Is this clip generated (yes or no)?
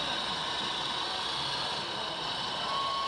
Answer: no